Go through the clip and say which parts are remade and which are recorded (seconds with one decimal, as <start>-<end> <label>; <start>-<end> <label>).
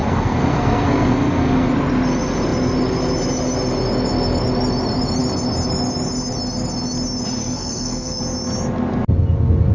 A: 0.0-1.7 remade; 1.7-7.4 recorded; 7.4-8.2 remade; 8.2-9.7 recorded